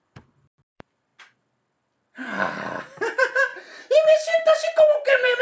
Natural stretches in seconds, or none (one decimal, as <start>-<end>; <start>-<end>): 1.1-2.8

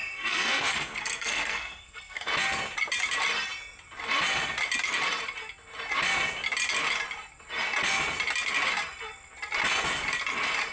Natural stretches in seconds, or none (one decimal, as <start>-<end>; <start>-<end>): 2.3-10.7

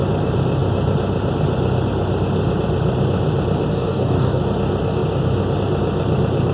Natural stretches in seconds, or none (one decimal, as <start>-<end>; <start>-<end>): 0.0-3.7; 4.4-6.5